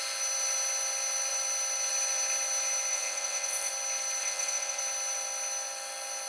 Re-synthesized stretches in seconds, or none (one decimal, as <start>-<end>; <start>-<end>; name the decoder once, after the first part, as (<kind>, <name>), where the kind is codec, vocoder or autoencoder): 2.9-3.7 (vocoder, WaveNeXt); 4.2-4.8